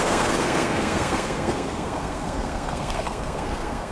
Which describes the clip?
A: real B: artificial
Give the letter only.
B